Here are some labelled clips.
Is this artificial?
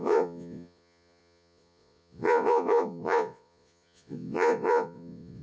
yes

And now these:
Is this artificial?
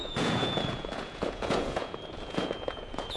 yes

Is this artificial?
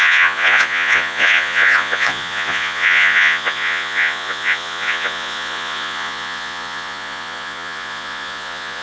yes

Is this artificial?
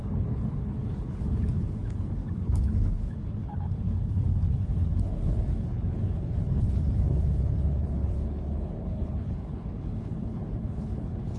yes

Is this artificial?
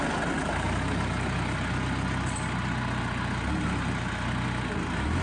no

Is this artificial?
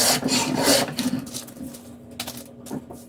no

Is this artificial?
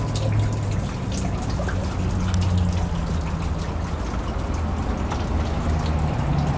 no